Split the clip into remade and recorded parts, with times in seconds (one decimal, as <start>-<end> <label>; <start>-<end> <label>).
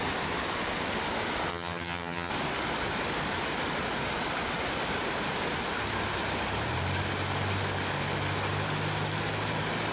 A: 0.0-1.5 recorded; 1.5-2.3 remade; 2.3-9.9 recorded